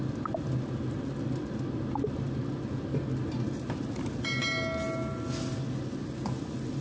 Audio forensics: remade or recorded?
recorded